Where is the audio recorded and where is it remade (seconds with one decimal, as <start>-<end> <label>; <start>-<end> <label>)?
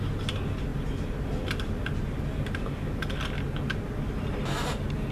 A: 0.0-5.1 recorded